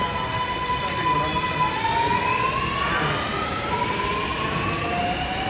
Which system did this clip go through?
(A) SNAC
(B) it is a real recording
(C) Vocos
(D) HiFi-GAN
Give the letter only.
B